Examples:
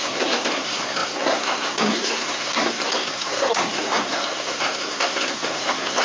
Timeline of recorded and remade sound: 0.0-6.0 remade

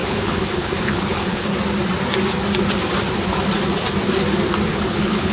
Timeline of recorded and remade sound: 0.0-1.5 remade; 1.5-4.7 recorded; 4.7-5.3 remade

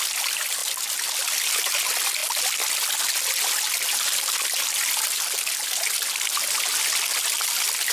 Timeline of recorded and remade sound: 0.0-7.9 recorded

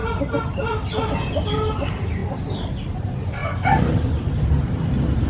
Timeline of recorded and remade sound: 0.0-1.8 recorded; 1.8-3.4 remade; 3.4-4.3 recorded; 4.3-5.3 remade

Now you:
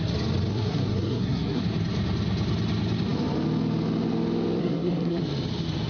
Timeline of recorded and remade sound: 0.0-0.5 recorded; 0.5-1.6 remade; 1.6-4.6 recorded; 4.6-5.2 remade; 5.2-5.9 recorded

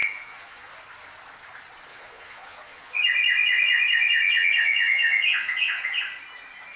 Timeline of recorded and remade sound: 0.0-0.7 remade; 0.7-1.9 recorded; 1.9-6.0 remade; 6.0-6.8 recorded